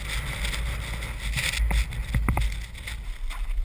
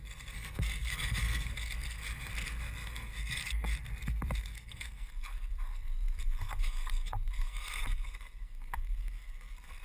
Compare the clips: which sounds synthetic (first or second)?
second